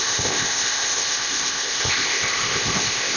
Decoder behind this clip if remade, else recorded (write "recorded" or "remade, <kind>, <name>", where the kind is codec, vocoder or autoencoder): remade, codec, ZipCodec